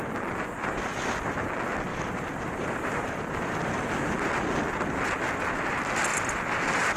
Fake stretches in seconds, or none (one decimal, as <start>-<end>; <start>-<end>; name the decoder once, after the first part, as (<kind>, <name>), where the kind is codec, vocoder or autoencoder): 1.9-3.8 (vocoder, BigVGAN v2)